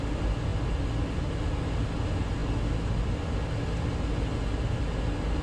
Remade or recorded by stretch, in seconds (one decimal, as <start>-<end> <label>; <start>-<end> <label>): 0.0-5.4 recorded